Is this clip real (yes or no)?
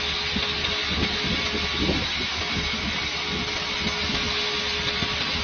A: yes